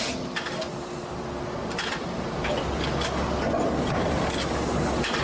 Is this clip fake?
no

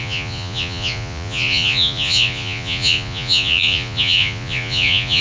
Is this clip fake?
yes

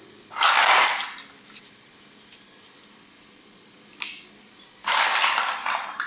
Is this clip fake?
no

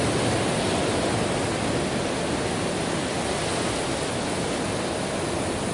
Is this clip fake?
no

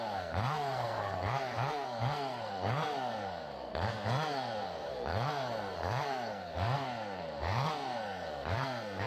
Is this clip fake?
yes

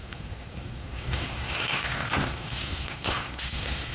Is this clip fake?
yes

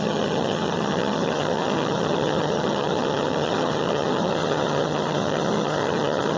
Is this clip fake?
yes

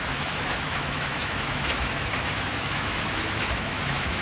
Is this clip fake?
yes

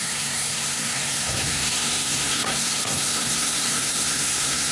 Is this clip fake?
yes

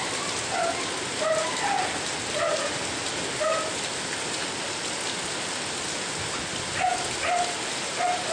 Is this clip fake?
no